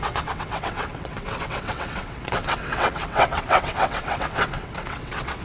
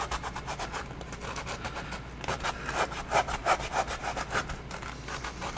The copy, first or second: first